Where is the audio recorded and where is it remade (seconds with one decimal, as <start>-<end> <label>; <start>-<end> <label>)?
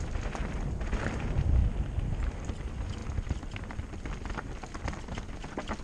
0.0-5.8 recorded